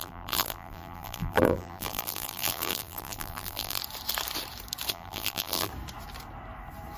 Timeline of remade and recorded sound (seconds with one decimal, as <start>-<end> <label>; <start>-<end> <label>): 0.0-3.8 remade; 3.8-4.9 recorded; 4.9-5.7 remade; 5.7-7.0 recorded